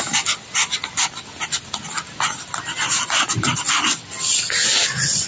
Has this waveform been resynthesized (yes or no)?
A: no